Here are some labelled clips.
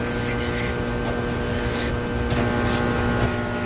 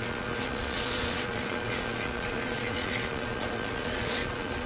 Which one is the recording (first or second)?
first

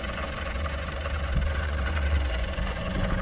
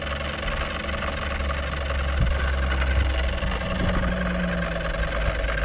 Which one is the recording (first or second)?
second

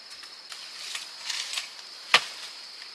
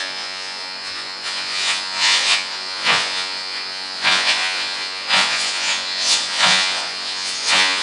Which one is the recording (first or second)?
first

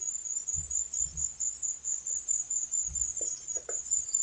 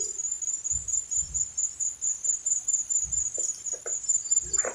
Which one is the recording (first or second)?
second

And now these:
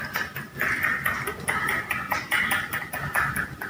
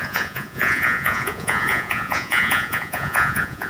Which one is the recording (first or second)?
first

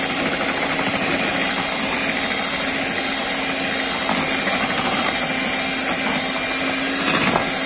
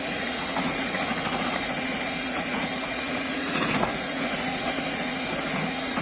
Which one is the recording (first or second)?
first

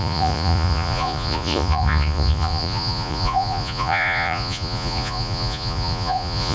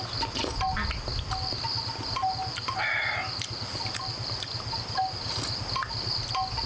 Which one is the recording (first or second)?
second